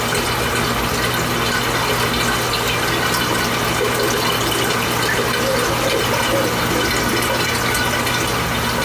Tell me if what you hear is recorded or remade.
recorded